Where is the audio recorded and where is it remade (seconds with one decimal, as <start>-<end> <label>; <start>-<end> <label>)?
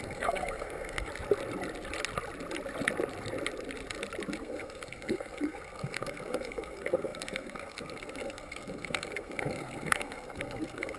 0.0-1.1 remade; 1.1-4.4 recorded; 4.4-11.0 remade